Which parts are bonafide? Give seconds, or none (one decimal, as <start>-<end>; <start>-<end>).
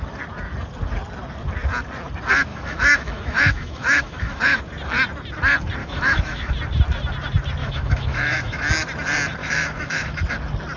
0.0-2.5; 4.6-5.8; 6.5-7.6; 8.6-9.4; 10.2-10.8